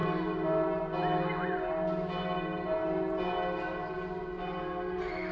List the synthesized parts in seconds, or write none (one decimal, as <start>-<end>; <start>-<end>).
none

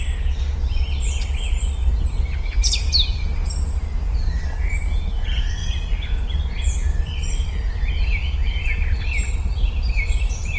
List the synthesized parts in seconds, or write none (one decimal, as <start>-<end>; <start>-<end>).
0.0-3.3; 4.7-5.6; 6.2-10.6

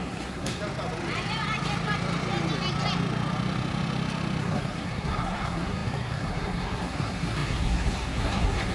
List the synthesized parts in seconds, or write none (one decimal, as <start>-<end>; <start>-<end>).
0.0-0.6; 4.4-8.7

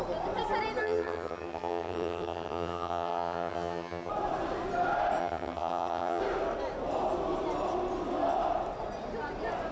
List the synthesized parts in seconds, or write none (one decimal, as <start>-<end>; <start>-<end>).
0.8-4.1; 5.2-6.2